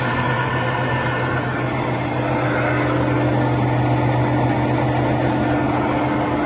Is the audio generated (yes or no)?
no